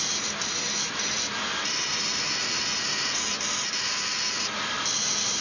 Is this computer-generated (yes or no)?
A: no